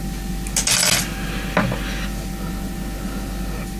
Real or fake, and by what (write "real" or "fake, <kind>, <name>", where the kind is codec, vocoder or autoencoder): real